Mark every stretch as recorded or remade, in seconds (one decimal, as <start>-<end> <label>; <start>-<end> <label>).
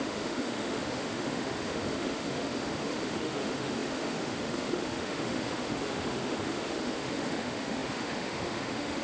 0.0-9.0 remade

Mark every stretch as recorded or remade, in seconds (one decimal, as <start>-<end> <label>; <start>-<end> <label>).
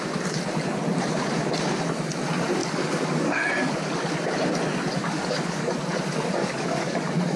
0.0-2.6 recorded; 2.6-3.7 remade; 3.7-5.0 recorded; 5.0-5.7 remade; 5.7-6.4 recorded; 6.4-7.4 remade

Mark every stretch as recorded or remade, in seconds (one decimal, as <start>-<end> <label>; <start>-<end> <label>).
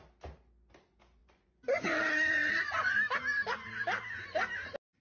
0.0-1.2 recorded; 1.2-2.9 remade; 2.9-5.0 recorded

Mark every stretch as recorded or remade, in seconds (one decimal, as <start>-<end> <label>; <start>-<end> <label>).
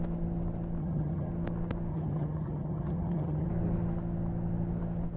0.0-0.8 recorded; 0.8-1.3 remade; 1.3-1.9 recorded; 1.9-3.5 remade; 3.5-5.2 recorded